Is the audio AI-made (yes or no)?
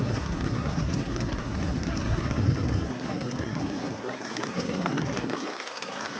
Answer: yes